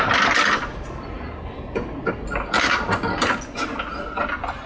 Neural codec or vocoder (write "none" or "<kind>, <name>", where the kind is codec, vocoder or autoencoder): none